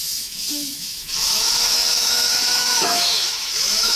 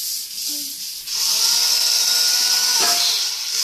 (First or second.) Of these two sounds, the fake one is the first